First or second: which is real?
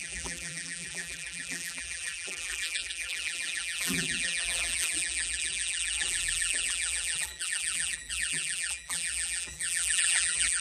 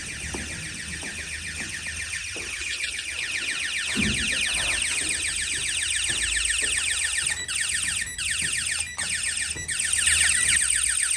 second